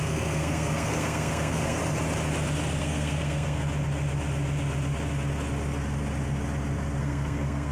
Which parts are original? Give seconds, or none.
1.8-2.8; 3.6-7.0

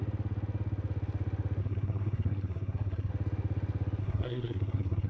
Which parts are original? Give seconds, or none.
0.0-1.6; 3.1-4.0